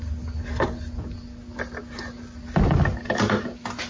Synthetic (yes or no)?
no